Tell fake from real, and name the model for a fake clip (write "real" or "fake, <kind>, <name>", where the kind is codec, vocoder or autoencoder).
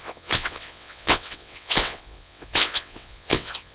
fake, vocoder, WaveNeXt